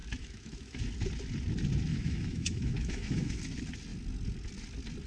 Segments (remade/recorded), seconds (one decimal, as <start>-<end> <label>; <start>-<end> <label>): 0.0-0.8 remade; 0.8-1.9 recorded; 1.9-3.4 remade; 3.4-5.1 recorded